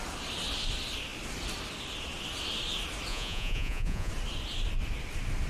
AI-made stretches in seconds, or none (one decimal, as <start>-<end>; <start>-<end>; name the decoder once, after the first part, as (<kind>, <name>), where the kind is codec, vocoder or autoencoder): 3.1-4.1 (vocoder, Vocos)